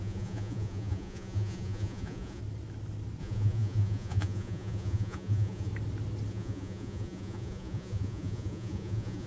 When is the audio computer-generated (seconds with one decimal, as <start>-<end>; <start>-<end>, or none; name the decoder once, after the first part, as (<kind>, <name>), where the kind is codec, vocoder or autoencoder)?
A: 0.0-2.4 (vocoder, Vocos); 3.2-5.7; 6.3-9.3